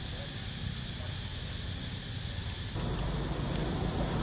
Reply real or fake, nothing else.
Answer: real